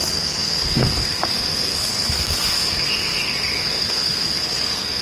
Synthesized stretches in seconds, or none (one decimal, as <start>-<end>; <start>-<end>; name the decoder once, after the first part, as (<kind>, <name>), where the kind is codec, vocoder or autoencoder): 0.0-5.0 (codec, SNAC)